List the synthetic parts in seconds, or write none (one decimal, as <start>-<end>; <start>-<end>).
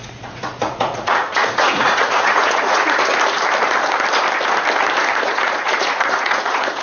0.0-3.1; 5.1-6.8